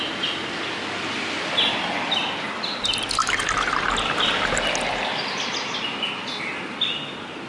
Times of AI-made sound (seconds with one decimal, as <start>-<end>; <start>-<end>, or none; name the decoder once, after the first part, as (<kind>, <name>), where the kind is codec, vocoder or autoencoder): none